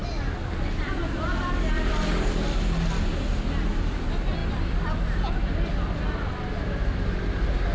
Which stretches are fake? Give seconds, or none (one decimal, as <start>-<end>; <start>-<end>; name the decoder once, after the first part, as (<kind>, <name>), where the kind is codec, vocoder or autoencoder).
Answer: none